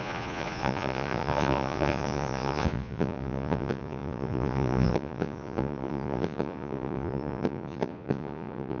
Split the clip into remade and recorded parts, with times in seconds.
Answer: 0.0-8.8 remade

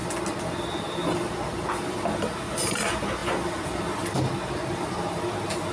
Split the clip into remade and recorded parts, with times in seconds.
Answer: 0.0-5.7 recorded

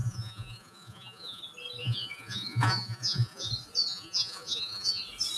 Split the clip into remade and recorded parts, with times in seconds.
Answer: 0.0-1.4 remade; 1.4-1.8 recorded; 1.8-3.5 remade; 3.5-3.9 recorded; 3.9-5.0 remade; 5.0-5.4 recorded